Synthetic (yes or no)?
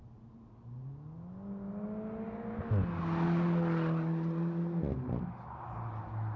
no